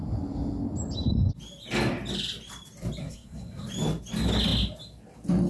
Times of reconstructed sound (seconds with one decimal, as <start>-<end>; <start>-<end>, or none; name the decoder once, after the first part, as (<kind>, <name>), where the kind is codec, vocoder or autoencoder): 3.0-3.7 (codec, SNAC)